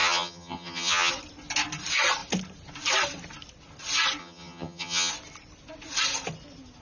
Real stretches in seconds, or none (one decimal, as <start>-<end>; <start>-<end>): 1.1-4.2; 5.1-6.8